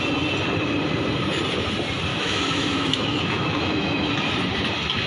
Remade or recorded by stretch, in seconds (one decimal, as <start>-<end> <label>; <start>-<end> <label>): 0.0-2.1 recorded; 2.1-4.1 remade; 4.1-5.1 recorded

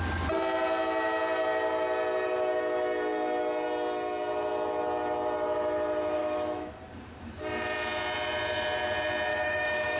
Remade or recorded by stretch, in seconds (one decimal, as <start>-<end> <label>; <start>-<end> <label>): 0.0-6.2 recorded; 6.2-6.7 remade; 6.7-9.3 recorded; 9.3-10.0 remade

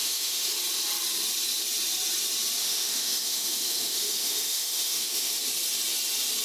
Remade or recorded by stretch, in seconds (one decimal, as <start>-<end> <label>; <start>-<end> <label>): 0.0-0.5 remade; 0.5-2.6 recorded; 2.6-5.3 remade; 5.3-6.4 recorded

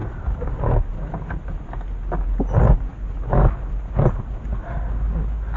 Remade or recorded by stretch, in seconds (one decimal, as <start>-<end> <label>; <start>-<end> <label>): 0.0-5.6 recorded

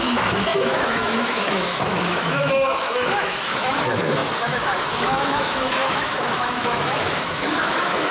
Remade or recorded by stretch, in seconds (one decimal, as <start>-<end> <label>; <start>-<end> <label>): 0.0-8.1 remade

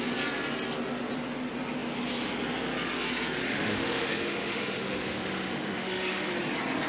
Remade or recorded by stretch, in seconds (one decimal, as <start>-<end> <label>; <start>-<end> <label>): 0.0-3.4 recorded; 3.4-6.3 remade; 6.3-6.9 recorded

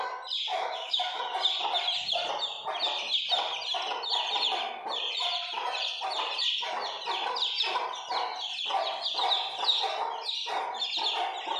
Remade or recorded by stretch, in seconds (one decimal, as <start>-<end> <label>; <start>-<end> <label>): 0.0-0.5 recorded; 0.5-1.2 remade; 1.2-11.6 recorded